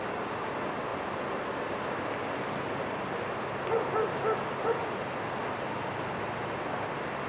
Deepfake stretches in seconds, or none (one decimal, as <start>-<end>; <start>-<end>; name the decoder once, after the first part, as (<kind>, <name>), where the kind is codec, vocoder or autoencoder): none